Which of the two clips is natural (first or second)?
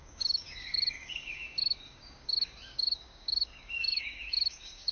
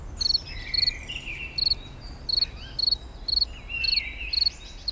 second